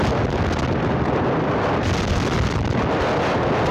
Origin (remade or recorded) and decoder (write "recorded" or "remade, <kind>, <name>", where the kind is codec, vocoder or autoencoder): recorded